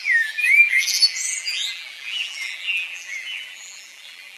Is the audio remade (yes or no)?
yes